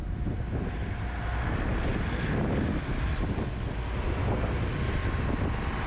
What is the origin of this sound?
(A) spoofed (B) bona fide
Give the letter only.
B